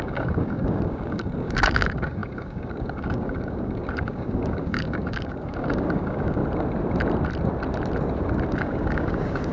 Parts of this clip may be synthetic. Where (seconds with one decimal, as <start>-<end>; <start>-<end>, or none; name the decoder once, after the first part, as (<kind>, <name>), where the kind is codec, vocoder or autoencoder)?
0.0-6.4 (codec, DAC); 8.5-9.5